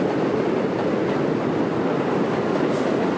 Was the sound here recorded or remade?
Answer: recorded